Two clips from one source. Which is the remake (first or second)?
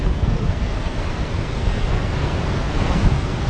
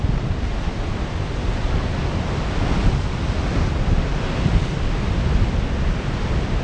first